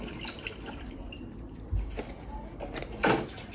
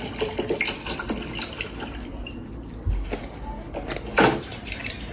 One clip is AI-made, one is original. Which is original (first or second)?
second